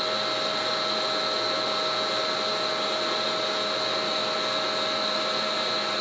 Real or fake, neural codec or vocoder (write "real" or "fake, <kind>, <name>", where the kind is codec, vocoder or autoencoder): real